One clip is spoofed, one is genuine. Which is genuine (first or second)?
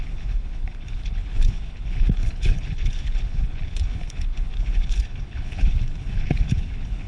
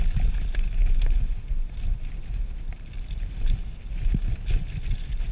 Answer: second